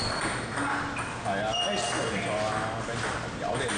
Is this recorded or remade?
recorded